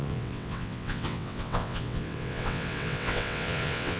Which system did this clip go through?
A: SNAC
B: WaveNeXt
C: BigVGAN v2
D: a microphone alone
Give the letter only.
B